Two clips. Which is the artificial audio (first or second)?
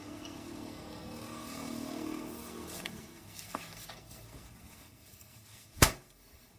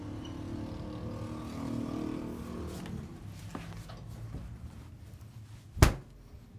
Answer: first